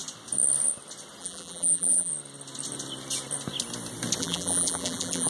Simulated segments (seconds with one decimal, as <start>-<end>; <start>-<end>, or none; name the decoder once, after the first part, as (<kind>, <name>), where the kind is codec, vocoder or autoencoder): 1.2-2.1 (vocoder, BigVGAN v2); 4.2-5.3